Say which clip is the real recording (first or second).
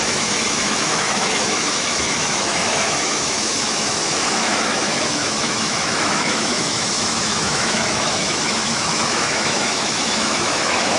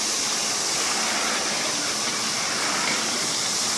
second